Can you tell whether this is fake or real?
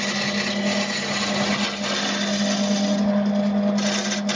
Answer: real